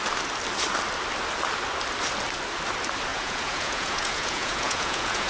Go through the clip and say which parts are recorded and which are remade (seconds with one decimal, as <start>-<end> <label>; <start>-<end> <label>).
0.0-3.1 recorded; 3.1-5.3 remade